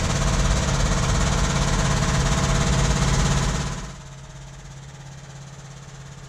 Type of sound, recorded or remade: recorded